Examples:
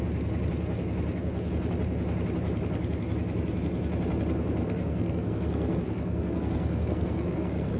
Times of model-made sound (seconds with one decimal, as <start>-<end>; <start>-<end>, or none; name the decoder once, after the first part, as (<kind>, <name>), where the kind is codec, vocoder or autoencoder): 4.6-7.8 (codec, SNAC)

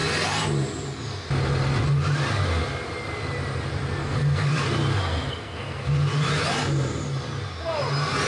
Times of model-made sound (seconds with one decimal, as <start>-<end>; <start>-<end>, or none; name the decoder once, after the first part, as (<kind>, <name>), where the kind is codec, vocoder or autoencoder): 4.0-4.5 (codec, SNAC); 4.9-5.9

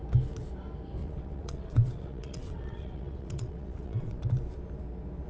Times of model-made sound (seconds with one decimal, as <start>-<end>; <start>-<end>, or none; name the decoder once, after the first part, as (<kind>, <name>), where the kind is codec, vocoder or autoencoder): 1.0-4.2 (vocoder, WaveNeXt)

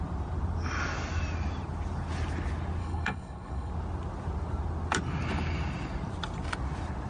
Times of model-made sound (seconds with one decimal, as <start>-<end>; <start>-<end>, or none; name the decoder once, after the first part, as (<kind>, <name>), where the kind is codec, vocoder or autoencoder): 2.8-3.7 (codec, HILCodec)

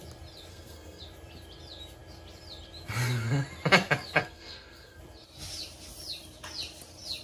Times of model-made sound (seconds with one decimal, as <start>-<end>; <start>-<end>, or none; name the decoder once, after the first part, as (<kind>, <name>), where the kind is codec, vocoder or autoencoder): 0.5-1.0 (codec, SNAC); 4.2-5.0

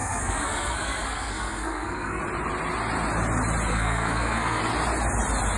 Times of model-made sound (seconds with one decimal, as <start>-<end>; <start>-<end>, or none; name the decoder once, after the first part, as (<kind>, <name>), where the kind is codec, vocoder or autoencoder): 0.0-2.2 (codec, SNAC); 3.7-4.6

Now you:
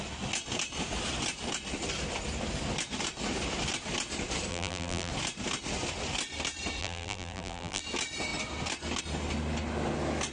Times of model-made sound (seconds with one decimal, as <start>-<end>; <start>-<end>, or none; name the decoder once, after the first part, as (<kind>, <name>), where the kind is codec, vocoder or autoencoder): 4.5-5.1 (vocoder, BigVGAN v2); 6.8-7.8